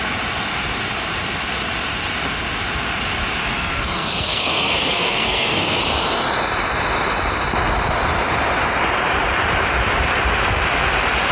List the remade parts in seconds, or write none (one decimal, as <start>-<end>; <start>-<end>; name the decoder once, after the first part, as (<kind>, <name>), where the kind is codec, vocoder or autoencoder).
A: 3.4-5.8 (codec, SNAC)